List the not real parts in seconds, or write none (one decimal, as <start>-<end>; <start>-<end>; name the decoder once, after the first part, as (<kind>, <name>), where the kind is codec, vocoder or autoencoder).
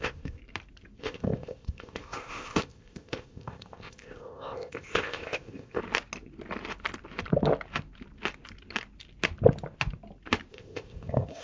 0.0-0.4 (codec, ZipCodec); 1.0-5.8; 10.5-11.4